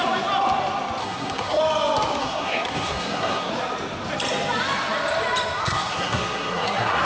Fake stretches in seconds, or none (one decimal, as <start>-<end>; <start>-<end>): 1.0-1.6; 2.2-3.5; 5.6-7.0